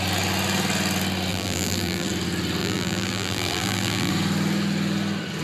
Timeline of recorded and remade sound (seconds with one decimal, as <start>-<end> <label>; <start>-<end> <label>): 0.0-1.3 recorded; 1.3-2.1 remade; 2.1-2.6 recorded; 2.6-4.1 remade; 4.1-5.4 recorded